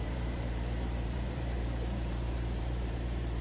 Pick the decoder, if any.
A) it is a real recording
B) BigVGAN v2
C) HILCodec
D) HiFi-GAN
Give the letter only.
B